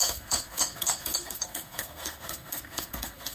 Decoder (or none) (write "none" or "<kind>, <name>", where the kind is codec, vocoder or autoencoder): codec, SNAC